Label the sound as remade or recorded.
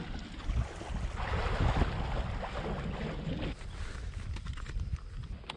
recorded